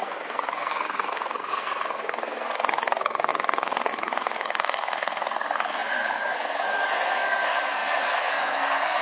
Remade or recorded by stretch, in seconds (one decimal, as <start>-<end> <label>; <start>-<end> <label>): 0.0-9.0 remade